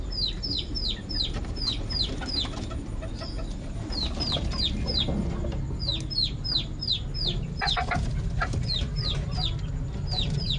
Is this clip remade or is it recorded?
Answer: recorded